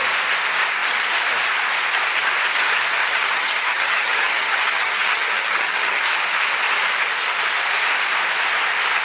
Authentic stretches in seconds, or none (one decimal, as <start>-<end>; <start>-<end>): 0.0-3.0; 6.0-9.0